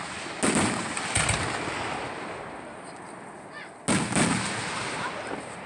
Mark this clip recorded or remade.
recorded